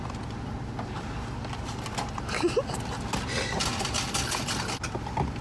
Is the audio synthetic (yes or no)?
no